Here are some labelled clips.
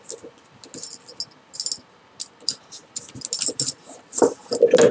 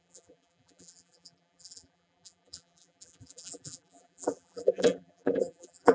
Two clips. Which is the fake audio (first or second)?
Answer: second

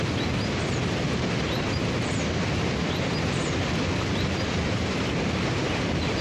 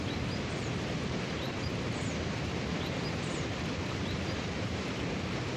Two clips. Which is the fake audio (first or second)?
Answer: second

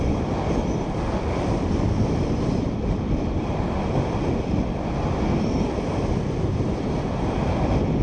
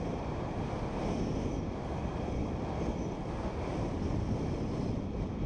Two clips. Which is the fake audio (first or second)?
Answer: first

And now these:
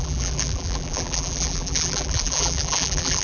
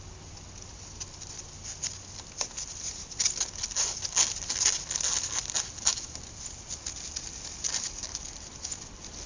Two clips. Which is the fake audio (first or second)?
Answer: first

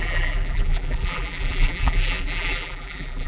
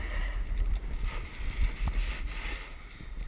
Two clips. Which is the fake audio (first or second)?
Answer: first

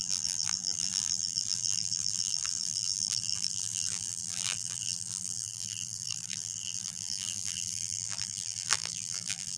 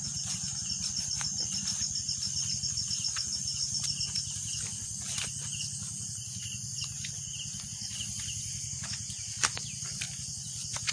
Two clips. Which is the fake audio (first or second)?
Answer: first